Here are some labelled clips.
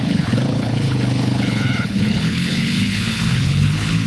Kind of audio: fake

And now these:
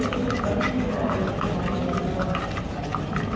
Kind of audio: real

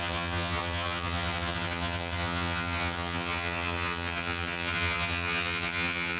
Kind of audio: fake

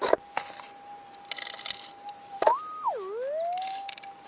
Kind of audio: real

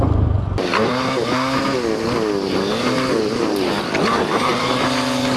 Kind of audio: real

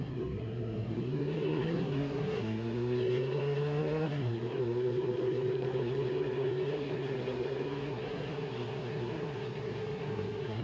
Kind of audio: fake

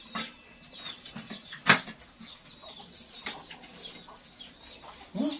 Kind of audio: fake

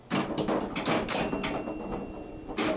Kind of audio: real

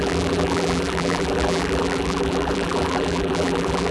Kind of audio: fake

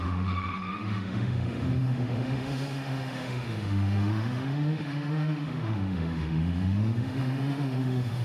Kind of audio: fake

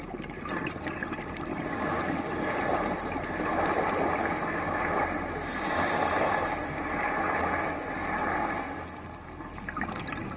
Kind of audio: real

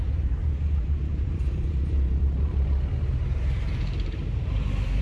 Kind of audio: fake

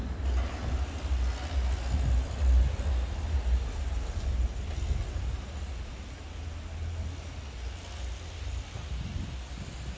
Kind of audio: real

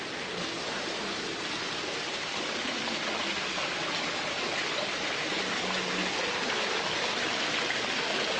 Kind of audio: real